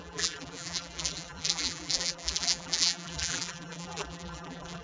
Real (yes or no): no